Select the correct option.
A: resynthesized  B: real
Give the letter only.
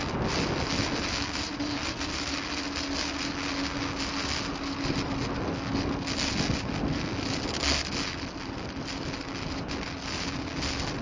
B